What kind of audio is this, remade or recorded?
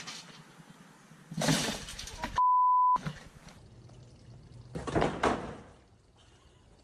recorded